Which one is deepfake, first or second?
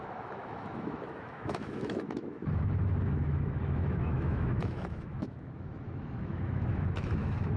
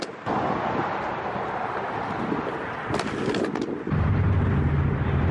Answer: first